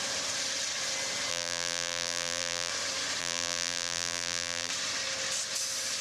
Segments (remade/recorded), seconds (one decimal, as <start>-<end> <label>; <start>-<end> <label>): 0.0-1.3 recorded; 1.3-2.7 remade; 2.7-3.2 recorded; 3.2-4.7 remade; 4.7-6.0 recorded

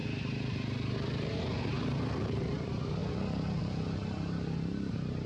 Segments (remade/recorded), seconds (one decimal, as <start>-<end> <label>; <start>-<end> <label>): 0.0-3.0 remade; 3.0-3.6 recorded; 3.6-5.3 remade

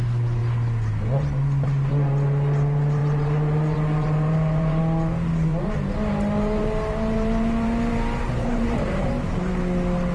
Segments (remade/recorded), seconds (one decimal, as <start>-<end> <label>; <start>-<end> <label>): 0.0-3.0 recorded; 3.0-4.8 remade; 4.8-6.1 recorded; 6.1-9.5 remade; 9.5-10.1 recorded

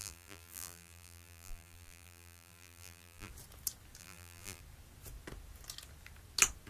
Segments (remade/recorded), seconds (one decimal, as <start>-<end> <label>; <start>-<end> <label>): 0.0-3.3 remade; 3.3-4.0 recorded; 4.0-4.6 remade; 4.6-6.7 recorded